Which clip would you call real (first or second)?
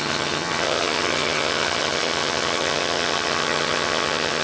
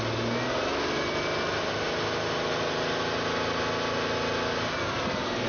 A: second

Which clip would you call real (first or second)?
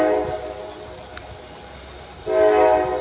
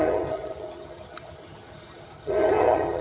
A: first